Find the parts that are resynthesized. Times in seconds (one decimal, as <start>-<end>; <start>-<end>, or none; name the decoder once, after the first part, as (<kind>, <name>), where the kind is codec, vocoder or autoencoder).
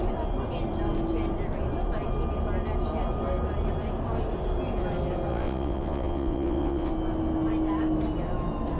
5.3-6.9 (vocoder, WaveNeXt)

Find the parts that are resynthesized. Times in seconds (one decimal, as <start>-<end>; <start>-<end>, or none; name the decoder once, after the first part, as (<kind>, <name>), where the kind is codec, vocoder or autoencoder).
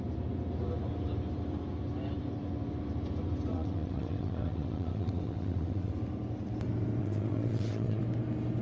3.5-5.9 (vocoder, WaveNeXt); 7.0-8.0